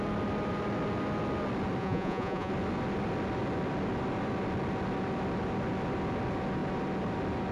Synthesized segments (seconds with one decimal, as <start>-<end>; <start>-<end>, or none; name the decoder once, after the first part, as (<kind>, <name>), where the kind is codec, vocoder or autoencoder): 1.8-2.5 (vocoder, Vocos)